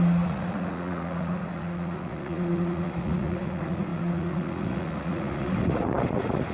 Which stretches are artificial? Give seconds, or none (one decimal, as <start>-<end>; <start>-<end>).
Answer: 0.0-6.5